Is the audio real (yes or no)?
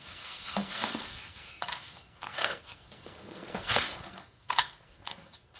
no